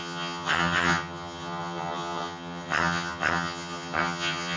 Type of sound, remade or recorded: remade